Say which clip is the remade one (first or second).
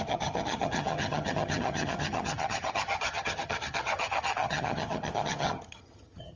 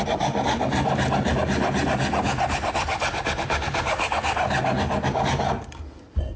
first